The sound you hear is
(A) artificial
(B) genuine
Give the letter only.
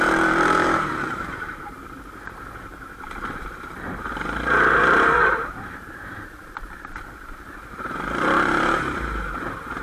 A